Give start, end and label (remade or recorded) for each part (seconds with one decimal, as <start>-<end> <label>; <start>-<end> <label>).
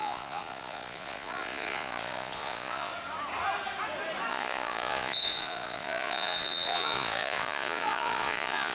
0.0-2.9 remade; 2.9-4.3 recorded; 4.3-8.7 remade